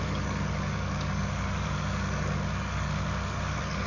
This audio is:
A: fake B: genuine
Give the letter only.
A